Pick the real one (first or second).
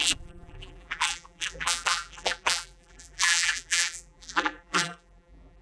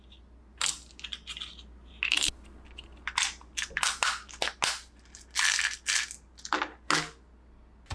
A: second